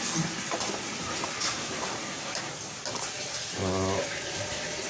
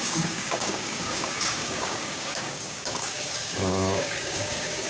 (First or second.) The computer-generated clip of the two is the second